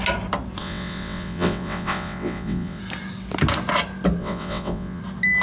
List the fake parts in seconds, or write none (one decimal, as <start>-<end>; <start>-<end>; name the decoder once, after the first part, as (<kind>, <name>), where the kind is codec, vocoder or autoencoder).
0.6-2.8 (vocoder, WaveNeXt); 4.2-5.0